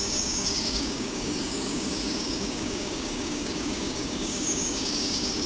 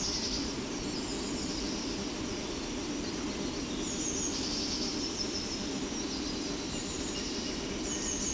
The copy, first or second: first